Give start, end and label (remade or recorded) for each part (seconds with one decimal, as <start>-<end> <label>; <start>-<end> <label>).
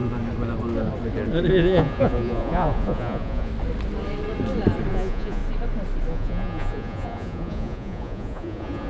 0.0-1.5 recorded; 1.5-3.5 remade; 3.5-4.9 recorded; 4.9-5.4 remade; 5.4-6.1 recorded; 6.1-8.9 remade